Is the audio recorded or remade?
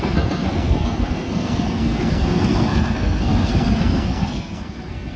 remade